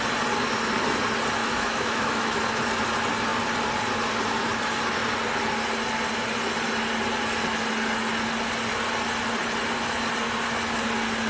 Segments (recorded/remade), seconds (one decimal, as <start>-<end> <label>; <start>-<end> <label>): 0.0-1.4 recorded; 1.4-2.4 remade; 2.4-11.3 recorded